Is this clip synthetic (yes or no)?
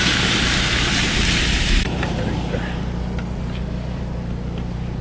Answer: yes